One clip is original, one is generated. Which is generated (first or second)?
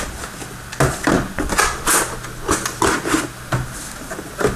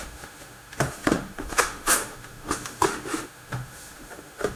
second